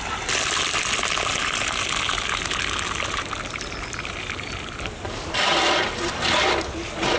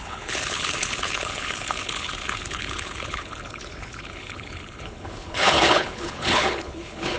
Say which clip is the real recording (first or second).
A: first